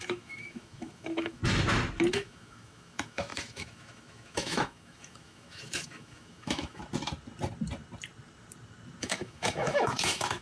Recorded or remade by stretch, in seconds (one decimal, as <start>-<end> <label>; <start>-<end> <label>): 0.0-1.4 remade; 1.4-2.1 recorded; 2.1-6.8 remade; 6.8-9.0 recorded; 9.0-10.4 remade